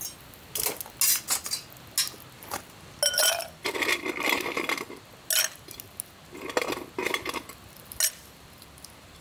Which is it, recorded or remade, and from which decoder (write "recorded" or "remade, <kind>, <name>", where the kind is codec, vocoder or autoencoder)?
recorded